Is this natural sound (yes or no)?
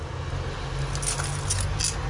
yes